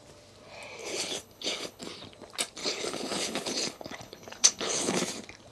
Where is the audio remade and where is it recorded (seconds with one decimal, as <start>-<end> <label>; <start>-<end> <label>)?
0.0-0.8 recorded; 0.8-1.8 remade; 1.8-2.6 recorded; 2.6-5.0 remade; 5.0-5.5 recorded